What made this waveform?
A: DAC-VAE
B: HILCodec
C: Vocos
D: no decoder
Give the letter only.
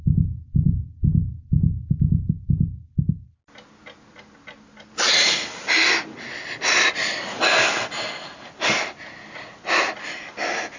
D